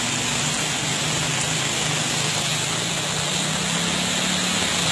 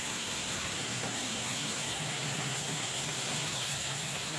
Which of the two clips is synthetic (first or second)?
second